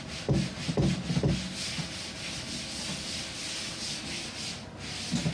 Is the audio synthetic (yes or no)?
no